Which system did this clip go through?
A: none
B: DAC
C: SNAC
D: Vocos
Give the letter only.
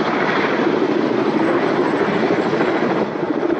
A